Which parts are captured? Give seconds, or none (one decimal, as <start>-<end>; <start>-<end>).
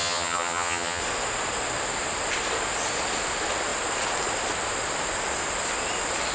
1.0-6.3